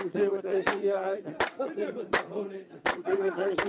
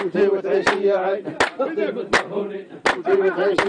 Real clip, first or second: second